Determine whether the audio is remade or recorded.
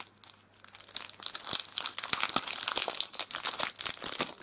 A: recorded